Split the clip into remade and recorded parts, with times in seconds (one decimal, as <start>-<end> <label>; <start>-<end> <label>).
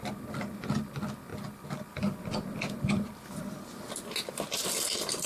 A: 0.0-4.6 recorded; 4.6-5.3 remade